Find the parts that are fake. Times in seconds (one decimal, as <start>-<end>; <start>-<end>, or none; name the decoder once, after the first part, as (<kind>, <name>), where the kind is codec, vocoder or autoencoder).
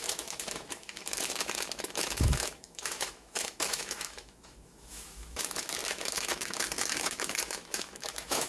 0.0-8.5 (autoencoder, DAC-VAE)